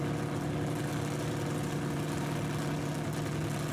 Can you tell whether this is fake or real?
real